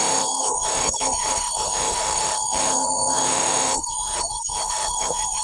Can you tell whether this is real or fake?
fake